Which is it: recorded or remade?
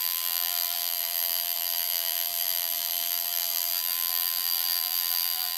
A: remade